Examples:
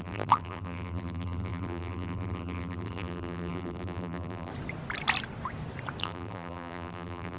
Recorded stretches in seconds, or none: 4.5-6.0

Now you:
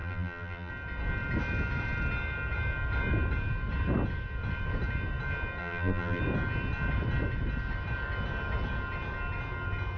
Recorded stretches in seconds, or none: 0.7-5.6; 6.2-10.0

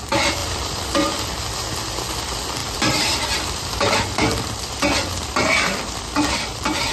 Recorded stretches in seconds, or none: 0.0-0.4; 1.4-2.6

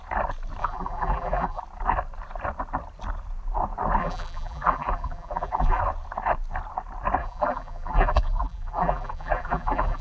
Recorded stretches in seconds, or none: 0.0-0.6; 1.6-4.0; 5.8-7.2